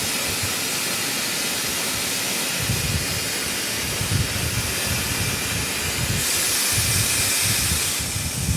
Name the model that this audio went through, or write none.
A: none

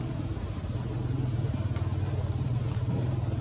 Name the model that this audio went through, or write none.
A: none